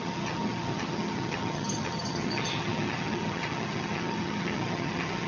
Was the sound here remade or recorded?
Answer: remade